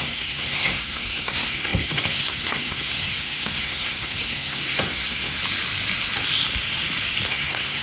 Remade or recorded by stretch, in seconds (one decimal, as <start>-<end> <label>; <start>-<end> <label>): 0.0-5.4 remade; 5.4-7.3 recorded; 7.3-7.8 remade